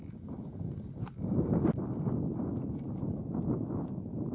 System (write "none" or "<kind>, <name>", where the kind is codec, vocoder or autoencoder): none